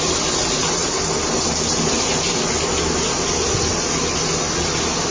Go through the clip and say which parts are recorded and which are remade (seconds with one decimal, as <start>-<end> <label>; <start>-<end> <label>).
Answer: 0.0-5.1 recorded